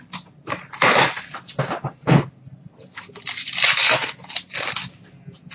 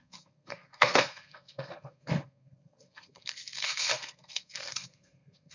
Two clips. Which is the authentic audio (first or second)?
first